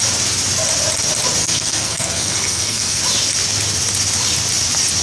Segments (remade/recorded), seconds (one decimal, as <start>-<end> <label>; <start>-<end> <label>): 0.0-1.4 recorded; 1.4-3.0 remade; 3.0-5.0 recorded